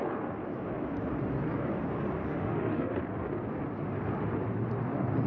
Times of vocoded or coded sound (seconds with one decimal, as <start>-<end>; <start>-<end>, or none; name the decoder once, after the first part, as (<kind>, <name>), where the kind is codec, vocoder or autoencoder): 2.2-3.0 (autoencoder, DAC-VAE)